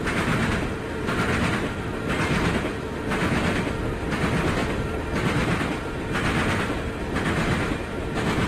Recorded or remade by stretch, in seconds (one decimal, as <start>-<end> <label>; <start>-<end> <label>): 0.0-8.5 recorded